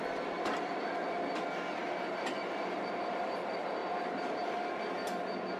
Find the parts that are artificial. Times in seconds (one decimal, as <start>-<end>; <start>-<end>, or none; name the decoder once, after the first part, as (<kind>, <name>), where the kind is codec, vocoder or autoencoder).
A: 3.8-4.5 (vocoder, BigVGAN v2)